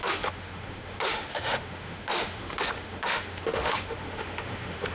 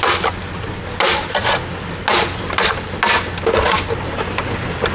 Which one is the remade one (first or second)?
first